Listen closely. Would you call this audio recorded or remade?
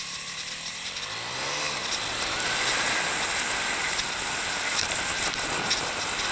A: recorded